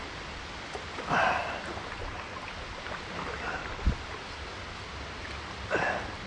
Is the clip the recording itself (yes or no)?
yes